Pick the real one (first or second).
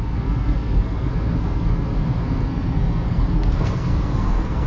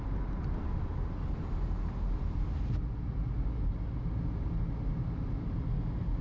second